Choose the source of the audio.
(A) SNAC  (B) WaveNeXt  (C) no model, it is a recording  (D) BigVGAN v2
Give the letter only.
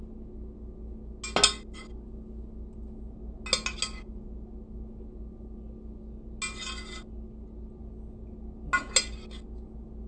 C